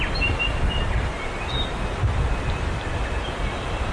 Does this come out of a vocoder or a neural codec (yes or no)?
no